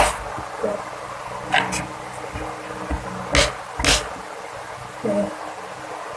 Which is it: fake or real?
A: real